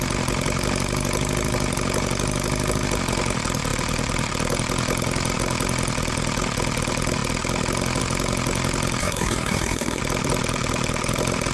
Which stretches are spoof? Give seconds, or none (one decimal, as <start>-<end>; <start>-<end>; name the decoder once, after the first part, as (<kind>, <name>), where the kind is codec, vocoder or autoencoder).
9.0-10.0 (codec, SNAC)